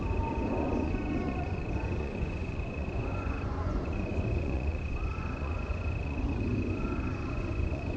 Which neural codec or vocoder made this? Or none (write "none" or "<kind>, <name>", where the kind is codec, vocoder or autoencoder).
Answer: vocoder, Vocos